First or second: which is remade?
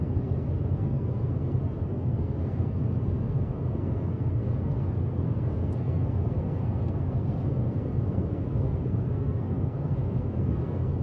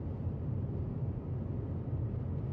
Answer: first